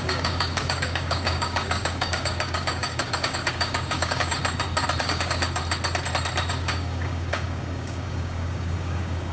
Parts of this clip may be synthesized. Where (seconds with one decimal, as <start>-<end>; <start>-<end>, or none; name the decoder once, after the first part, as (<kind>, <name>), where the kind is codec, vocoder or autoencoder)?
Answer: 0.0-4.4 (codec, DAC); 5.0-5.6; 6.5-9.3